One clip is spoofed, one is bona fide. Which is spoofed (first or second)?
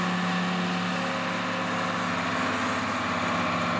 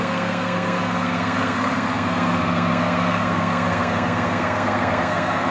second